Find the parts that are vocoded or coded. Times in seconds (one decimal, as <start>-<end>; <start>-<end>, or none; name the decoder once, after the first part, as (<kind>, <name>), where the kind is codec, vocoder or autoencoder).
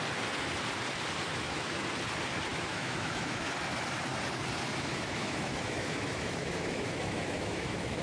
1.3-1.8 (autoencoder, DAC-VAE); 2.5-3.6; 4.7-8.0